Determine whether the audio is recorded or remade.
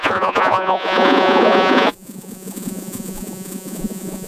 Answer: remade